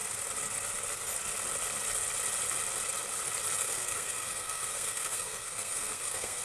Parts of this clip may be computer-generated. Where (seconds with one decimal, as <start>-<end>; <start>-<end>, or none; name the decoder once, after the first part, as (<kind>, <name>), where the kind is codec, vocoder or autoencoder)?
3.6-6.4 (codec, SNAC)